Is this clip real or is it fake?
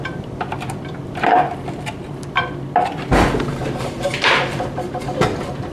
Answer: fake